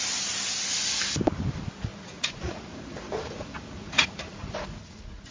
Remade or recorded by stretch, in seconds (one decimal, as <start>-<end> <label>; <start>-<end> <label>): 0.0-1.9 recorded; 1.9-5.3 remade